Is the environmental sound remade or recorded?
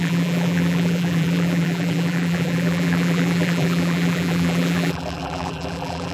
remade